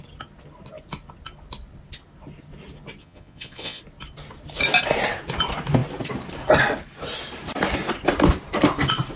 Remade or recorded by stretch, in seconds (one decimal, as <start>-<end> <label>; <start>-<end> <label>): 0.0-3.0 recorded; 3.0-3.8 remade; 3.8-9.2 recorded